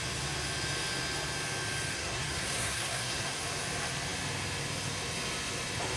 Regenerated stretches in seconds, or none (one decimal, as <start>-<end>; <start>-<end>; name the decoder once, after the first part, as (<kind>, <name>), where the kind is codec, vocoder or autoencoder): 1.9-3.4 (codec, SNAC)